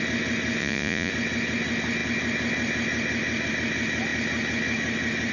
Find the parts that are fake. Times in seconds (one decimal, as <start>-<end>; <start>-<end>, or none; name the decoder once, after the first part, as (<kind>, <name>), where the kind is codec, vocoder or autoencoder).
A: 0.6-1.1 (vocoder, Vocos)